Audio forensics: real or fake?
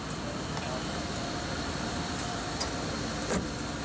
real